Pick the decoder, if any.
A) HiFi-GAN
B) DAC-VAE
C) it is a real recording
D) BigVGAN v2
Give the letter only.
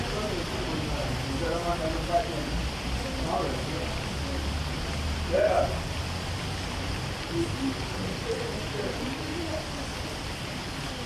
C